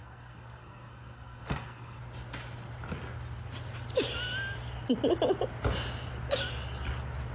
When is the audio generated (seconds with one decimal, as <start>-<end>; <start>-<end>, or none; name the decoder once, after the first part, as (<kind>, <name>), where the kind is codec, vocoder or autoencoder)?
0.0-2.0 (codec, SNAC)